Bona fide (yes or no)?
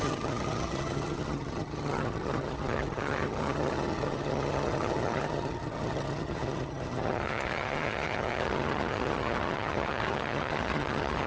no